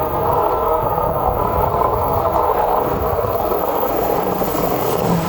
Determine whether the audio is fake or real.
fake